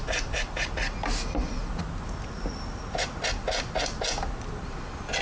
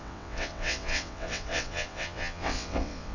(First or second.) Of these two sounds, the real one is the first